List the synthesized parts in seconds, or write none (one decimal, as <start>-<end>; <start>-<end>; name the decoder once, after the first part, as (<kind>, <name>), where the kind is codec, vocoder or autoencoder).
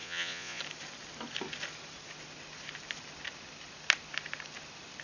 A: 0.0-0.6 (vocoder, Vocos)